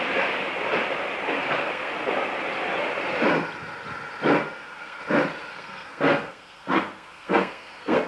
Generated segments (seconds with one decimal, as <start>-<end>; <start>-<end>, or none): 1.4-1.9; 4.4-5.0; 5.5-8.1